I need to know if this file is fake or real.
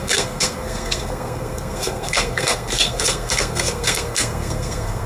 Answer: fake